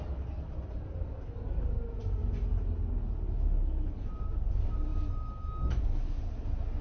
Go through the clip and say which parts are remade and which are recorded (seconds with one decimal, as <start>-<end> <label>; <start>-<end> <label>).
0.0-6.8 recorded